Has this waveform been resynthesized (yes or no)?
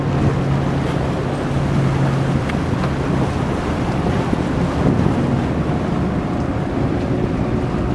no